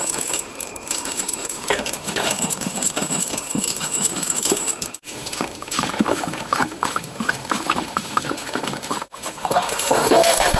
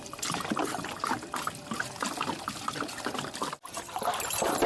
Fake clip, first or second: first